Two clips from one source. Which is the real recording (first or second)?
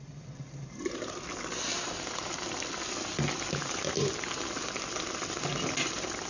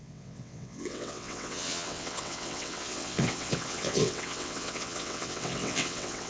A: first